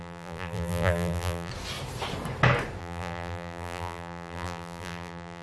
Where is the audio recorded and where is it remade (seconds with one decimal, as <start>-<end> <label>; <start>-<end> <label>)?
0.0-1.5 remade; 1.5-2.8 recorded; 2.8-5.4 remade